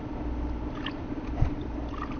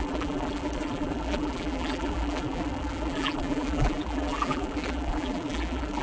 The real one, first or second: first